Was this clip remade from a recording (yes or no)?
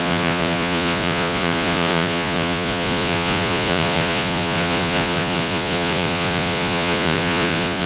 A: yes